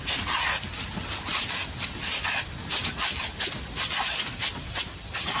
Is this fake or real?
real